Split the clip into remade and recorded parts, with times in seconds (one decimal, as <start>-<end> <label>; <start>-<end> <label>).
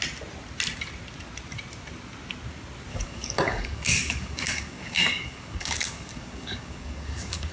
0.0-2.9 recorded; 2.9-7.5 remade